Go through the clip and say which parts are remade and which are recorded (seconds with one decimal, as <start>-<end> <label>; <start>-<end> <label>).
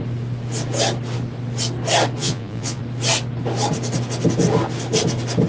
0.0-2.2 recorded; 2.2-2.8 remade; 2.8-5.5 recorded